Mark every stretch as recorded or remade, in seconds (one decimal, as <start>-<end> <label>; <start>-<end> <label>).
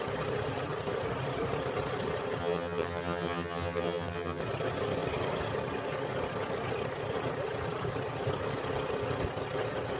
0.0-2.4 recorded; 2.4-4.4 remade; 4.4-10.0 recorded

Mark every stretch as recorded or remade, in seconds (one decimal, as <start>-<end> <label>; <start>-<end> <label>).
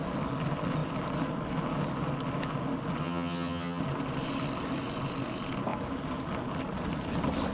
0.0-3.0 recorded; 3.0-3.8 remade; 3.8-7.5 recorded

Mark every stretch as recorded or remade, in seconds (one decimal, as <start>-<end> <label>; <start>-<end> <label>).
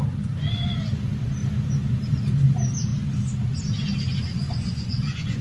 0.0-4.3 recorded; 4.3-5.4 remade